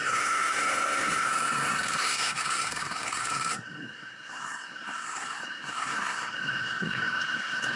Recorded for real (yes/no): no